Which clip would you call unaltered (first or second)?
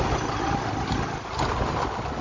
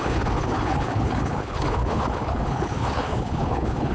first